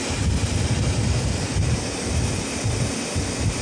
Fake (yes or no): yes